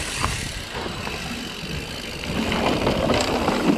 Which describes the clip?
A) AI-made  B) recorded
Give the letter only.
B